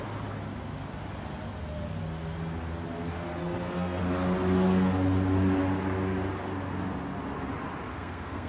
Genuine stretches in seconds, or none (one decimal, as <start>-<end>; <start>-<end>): 0.0-3.4; 4.0-7.9